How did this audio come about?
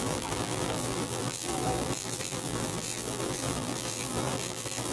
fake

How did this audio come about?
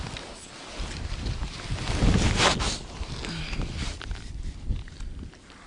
real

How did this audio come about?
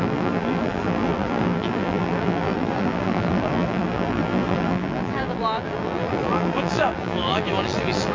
fake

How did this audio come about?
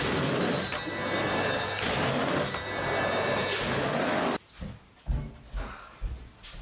real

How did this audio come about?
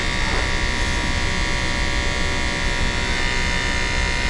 real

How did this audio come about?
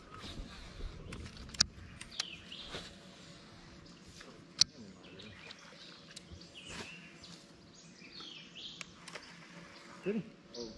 real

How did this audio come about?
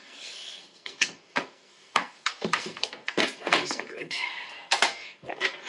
fake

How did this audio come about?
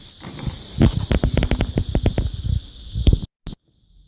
real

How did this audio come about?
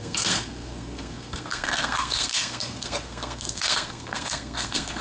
fake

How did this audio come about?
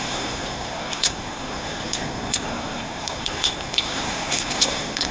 fake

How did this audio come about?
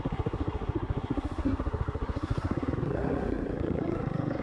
fake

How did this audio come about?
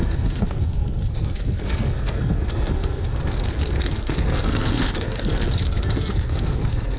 fake